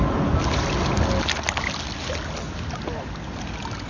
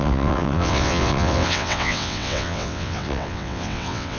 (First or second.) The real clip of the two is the first